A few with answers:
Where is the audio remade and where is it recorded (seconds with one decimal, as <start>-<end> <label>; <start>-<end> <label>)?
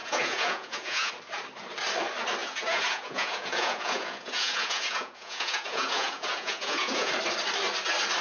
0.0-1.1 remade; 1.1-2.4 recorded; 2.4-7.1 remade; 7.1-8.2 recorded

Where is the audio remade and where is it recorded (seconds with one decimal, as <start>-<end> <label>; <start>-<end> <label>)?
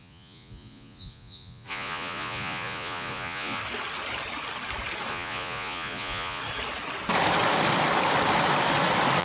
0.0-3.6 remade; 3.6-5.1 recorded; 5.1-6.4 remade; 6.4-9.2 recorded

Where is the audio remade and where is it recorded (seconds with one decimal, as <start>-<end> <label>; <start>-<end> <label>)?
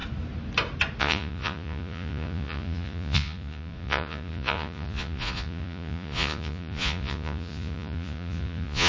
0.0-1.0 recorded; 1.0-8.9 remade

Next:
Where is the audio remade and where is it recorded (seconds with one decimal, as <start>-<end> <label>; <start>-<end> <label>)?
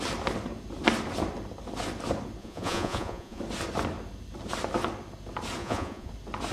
0.0-2.4 recorded; 2.4-3.4 remade; 3.4-5.6 recorded; 5.6-6.1 remade; 6.1-6.5 recorded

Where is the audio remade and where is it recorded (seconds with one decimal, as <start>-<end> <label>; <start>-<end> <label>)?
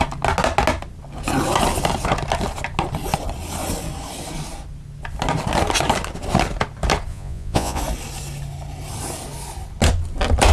0.0-7.1 recorded; 7.1-7.8 remade; 7.8-10.5 recorded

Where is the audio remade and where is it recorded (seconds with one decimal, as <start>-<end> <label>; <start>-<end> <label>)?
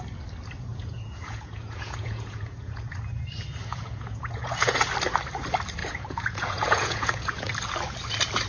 0.0-0.7 recorded; 0.7-2.9 remade; 2.9-3.7 recorded; 3.7-4.9 remade; 4.9-5.8 recorded; 5.8-7.5 remade; 7.5-8.5 recorded